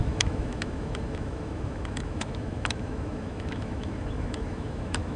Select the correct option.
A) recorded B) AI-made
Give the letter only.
B